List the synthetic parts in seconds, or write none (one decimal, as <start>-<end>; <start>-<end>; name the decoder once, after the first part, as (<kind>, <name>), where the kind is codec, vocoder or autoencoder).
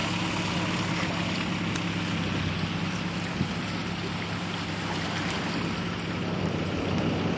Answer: none